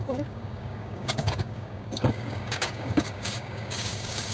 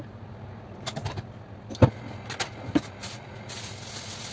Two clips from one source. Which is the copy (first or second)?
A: first